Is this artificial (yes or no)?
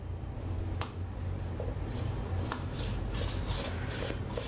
no